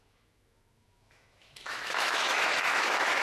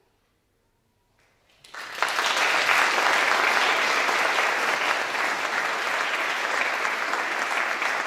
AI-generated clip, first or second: first